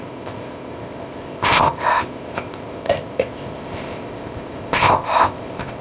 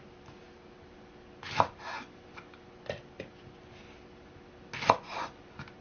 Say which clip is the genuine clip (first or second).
second